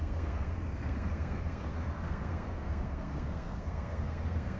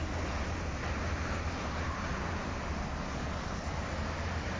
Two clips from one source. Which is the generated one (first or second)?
first